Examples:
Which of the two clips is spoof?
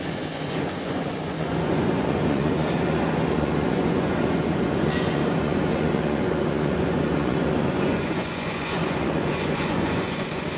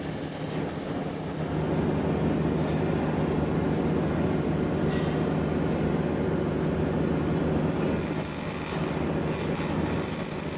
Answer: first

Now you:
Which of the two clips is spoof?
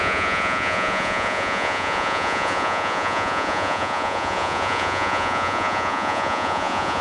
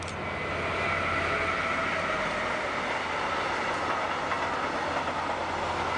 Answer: first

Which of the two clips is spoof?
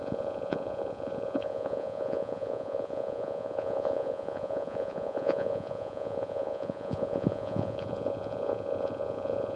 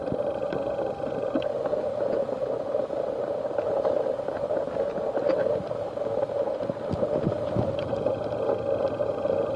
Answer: first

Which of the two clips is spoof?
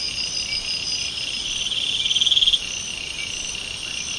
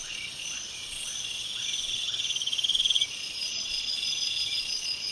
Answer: second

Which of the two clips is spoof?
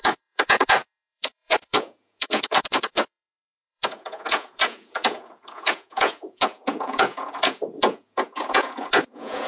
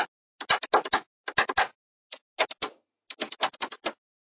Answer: first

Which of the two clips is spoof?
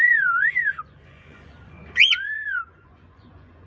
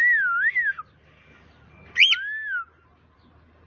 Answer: first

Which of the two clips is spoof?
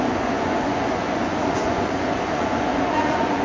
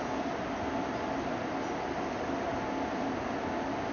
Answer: first